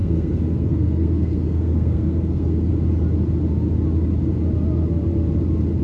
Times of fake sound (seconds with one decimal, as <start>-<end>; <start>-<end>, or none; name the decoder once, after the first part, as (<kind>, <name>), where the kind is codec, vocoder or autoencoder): 0.0-2.7 (codec, SNAC)

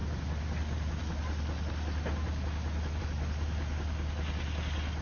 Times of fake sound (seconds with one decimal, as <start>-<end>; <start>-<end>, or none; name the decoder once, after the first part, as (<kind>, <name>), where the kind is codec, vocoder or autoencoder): none